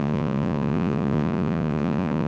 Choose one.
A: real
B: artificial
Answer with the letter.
B